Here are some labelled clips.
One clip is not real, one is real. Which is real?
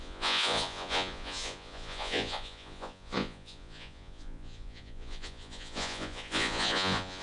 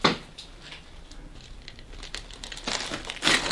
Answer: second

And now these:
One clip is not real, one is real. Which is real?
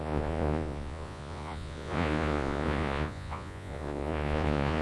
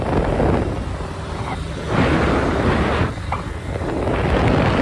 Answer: second